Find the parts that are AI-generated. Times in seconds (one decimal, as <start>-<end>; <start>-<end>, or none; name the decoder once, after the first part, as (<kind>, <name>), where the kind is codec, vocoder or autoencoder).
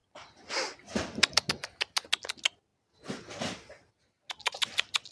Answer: none